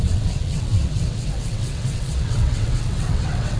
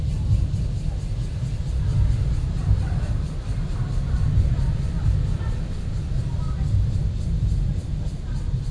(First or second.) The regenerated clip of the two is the first